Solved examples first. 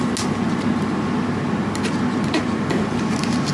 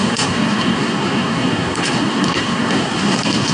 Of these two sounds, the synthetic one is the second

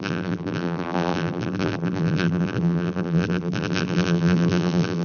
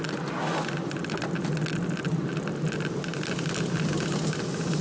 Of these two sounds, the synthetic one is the first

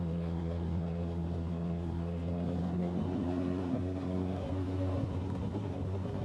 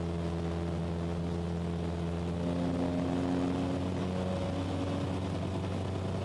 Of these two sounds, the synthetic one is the first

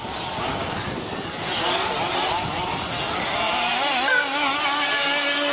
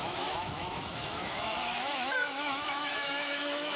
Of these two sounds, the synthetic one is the second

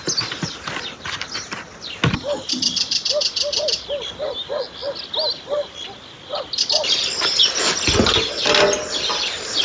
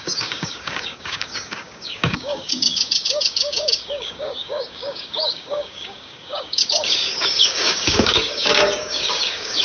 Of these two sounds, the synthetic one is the second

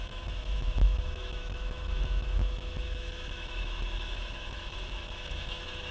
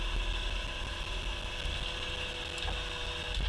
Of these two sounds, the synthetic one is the first